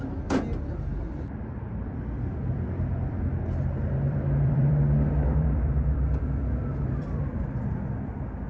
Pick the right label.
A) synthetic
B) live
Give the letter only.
A